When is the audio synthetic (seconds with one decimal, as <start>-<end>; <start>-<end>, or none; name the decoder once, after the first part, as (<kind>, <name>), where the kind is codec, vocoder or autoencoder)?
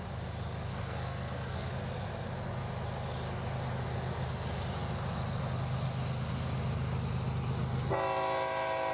0.7-1.7 (codec, SNAC)